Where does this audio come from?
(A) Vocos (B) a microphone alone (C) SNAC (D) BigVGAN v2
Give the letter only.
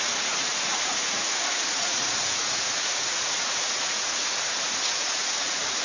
A